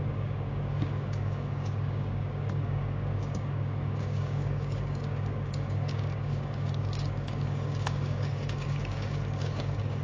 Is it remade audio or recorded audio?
remade